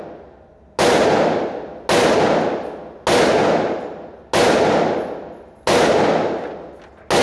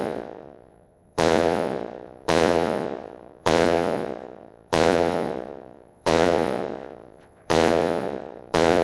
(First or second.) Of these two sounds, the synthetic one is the second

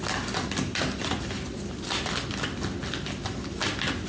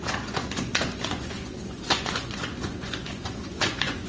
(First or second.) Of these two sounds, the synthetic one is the second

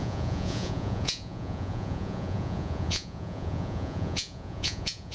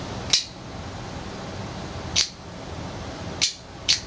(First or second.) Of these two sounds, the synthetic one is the first